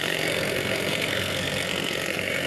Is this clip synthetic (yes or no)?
yes